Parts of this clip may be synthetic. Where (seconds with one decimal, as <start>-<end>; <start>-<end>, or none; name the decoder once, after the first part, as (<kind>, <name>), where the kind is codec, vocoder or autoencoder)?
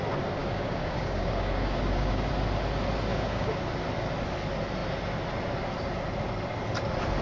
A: 0.4-2.3 (codec, DAC); 3.1-3.6